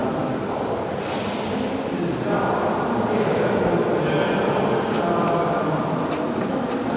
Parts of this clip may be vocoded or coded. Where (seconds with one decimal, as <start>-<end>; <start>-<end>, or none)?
none